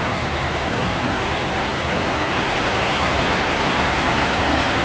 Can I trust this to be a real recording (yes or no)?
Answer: no